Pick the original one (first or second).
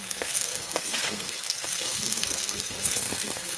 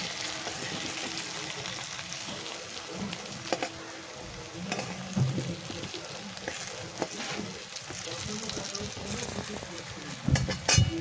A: second